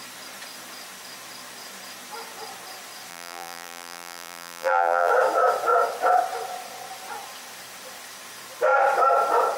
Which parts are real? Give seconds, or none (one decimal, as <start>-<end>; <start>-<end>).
0.0-3.1; 5.1-9.6